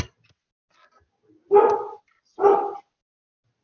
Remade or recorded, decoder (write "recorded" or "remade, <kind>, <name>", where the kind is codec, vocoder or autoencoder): recorded